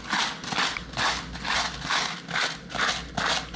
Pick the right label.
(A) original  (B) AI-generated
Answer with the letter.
A